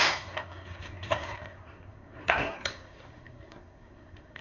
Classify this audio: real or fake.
fake